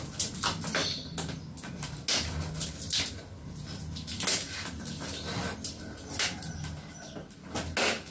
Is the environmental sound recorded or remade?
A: recorded